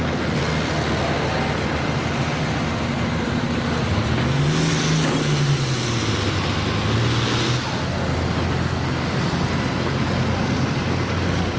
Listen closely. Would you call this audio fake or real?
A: real